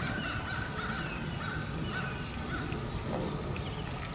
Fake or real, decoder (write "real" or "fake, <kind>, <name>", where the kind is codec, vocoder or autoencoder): real